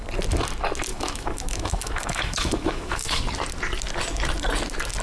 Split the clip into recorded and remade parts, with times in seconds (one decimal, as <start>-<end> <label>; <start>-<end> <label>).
0.0-0.9 recorded; 0.9-3.2 remade; 3.2-5.0 recorded